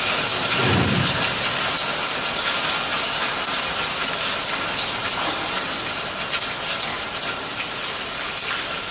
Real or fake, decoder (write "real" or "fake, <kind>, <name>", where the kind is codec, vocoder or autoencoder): real